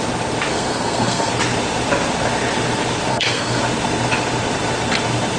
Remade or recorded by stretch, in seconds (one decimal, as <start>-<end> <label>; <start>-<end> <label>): 0.0-0.5 recorded; 0.5-1.3 remade; 1.3-3.1 recorded; 3.1-3.6 remade; 3.6-5.4 recorded